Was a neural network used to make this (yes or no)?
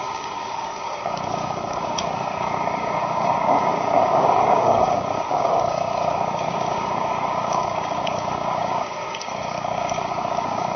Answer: yes